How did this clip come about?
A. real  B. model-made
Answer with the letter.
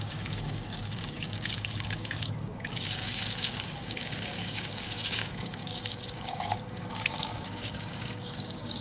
B